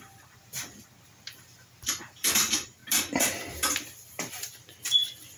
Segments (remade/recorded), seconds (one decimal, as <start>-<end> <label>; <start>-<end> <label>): 0.0-5.4 remade